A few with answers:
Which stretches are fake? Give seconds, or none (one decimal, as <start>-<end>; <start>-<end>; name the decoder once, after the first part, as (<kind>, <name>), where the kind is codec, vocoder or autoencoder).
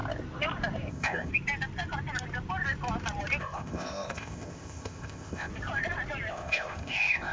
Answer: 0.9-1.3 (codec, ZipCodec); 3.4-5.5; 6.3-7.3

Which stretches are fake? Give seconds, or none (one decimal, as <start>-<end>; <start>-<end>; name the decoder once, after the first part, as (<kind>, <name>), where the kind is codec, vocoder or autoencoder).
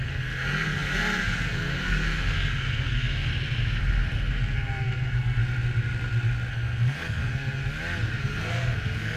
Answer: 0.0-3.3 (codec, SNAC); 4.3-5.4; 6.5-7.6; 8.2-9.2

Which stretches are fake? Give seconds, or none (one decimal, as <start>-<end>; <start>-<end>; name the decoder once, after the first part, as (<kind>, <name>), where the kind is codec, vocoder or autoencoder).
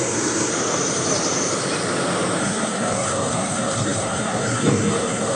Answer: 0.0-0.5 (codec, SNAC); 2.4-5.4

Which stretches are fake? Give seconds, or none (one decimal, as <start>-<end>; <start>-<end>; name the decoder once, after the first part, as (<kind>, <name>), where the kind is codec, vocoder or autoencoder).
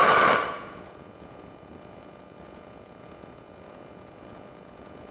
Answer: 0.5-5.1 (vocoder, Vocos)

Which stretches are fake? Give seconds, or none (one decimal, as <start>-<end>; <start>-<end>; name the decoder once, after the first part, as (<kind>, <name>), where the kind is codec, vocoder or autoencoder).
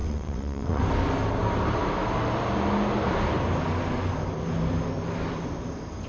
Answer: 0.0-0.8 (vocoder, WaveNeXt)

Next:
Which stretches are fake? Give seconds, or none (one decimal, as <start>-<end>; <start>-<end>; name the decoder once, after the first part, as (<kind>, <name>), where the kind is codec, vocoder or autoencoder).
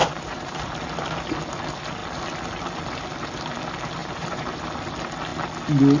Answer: 0.0-0.6 (vocoder, BigVGAN v2); 4.0-4.6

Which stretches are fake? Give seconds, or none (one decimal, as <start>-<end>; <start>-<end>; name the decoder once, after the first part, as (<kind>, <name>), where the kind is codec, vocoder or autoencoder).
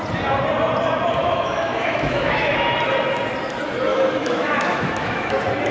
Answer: 1.2-2.7 (autoencoder, DAC-VAE); 3.9-5.3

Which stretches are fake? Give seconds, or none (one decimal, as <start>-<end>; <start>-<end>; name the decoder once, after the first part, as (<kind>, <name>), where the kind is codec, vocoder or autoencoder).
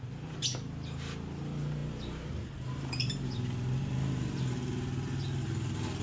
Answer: none